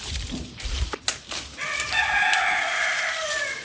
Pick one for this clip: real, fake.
real